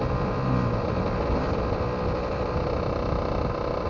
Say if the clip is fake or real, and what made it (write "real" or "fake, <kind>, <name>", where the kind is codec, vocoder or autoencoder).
real